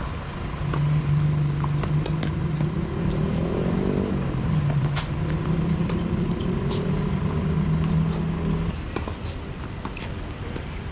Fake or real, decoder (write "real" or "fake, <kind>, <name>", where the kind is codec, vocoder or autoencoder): real